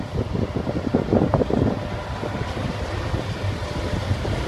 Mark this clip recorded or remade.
recorded